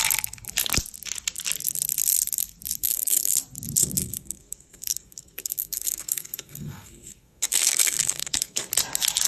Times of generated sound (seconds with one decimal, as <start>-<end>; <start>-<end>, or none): 2.8-3.3; 3.8-8.7